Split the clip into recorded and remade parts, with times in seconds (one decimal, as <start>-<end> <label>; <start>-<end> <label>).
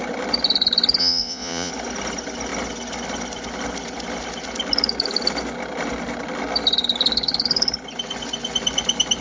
0.0-1.0 recorded; 1.0-1.7 remade; 1.7-9.2 recorded